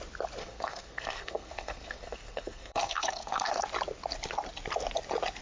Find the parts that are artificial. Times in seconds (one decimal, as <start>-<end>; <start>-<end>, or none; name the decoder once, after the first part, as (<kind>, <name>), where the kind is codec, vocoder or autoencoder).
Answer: 0.4-3.6 (codec, SNAC)

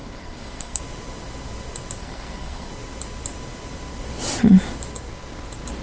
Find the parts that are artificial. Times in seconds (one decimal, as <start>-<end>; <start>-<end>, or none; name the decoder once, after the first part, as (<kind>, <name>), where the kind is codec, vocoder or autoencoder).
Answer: 0.0-0.8 (codec, SNAC); 2.0-2.7